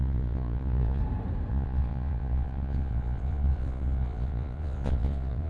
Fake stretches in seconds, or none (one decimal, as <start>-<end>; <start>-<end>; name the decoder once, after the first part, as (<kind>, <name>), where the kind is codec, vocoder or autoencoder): 0.0-1.0 (vocoder, Vocos); 1.5-5.5